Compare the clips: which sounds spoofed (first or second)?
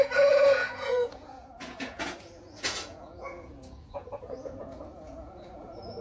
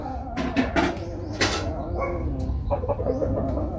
first